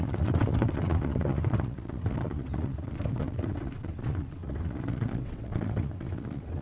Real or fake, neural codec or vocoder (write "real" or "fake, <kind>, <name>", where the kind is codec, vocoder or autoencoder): fake, vocoder, WaveNeXt